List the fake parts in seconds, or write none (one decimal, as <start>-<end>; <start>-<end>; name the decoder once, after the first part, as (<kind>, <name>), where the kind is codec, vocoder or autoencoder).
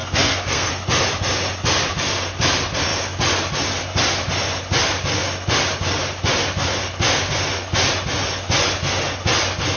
0.0-0.7 (codec, SNAC)